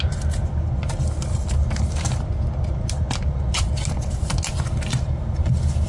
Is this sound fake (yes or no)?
no